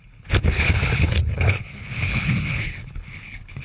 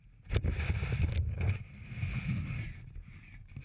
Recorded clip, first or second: second